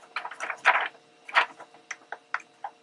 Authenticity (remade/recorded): recorded